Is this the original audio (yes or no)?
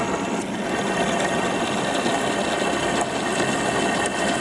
yes